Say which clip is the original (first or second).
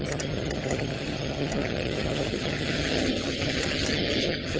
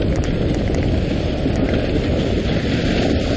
second